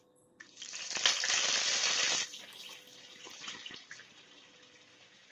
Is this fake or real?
real